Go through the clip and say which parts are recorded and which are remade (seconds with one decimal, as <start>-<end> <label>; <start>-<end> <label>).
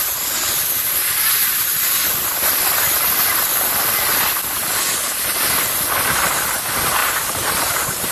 0.0-7.0 recorded; 7.0-8.1 remade